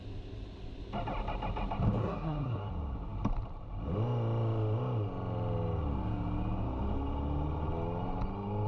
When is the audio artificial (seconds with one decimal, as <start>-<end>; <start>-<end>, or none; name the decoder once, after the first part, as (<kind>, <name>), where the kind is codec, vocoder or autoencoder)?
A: 2.0-2.7 (codec, SNAC)